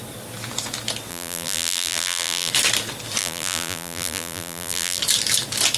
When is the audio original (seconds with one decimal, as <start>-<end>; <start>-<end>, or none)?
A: 0.0-1.1; 2.5-3.2; 5.0-5.8